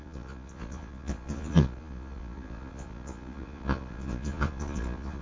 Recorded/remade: remade